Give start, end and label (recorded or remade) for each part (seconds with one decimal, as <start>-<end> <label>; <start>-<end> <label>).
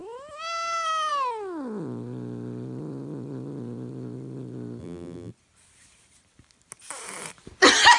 0.0-4.8 recorded; 4.8-5.3 remade; 5.3-8.0 recorded